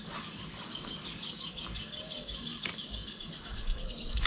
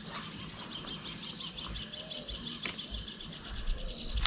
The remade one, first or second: first